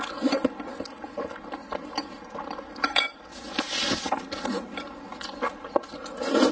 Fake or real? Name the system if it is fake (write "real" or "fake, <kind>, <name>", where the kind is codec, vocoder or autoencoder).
real